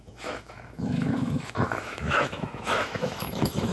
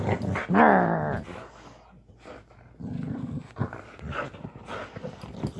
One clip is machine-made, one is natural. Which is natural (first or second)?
second